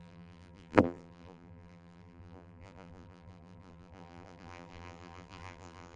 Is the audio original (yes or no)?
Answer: no